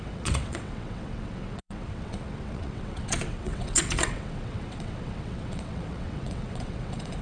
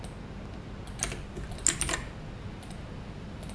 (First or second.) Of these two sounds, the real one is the second